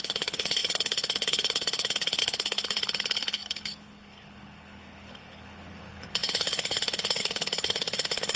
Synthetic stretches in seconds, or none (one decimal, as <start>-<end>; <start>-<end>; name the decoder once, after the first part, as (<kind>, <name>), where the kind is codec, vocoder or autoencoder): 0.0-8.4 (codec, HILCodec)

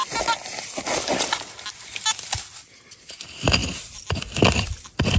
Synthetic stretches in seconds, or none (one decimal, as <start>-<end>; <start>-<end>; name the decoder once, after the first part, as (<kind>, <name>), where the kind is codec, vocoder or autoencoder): none

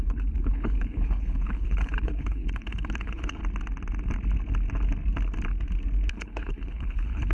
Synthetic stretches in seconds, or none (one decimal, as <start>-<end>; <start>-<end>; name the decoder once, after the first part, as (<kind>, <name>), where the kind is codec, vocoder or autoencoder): 0.0-3.4 (codec, HILCodec); 6.1-7.3